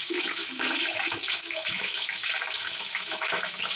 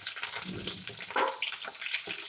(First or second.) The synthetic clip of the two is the first